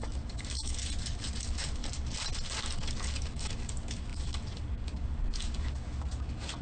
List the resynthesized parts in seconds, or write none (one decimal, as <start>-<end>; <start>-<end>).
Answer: 0.0-0.8; 1.4-1.8; 2.6-6.6